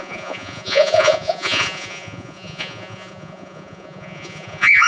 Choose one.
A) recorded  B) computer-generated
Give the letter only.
B